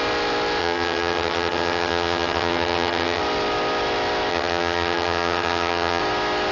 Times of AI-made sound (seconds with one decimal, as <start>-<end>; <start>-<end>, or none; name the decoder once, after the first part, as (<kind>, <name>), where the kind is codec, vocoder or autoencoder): 0.6-3.2 (vocoder, HiFi-GAN); 4.3-6.0